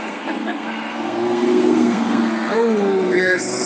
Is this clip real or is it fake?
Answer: fake